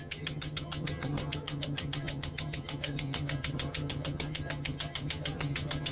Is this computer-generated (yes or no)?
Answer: yes